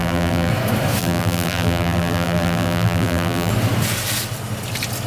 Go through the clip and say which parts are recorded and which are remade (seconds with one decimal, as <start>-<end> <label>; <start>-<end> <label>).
0.0-0.5 remade; 0.5-1.0 recorded; 1.0-3.5 remade; 3.5-5.1 recorded